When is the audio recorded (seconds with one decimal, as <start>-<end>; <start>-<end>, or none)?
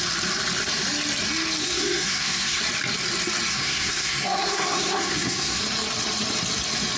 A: 0.0-1.6; 2.6-3.5; 5.6-7.0